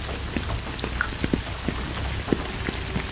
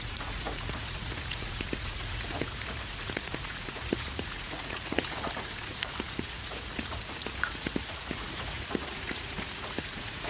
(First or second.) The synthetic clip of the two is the second